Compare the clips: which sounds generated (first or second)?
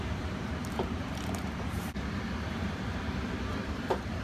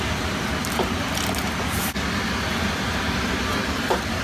first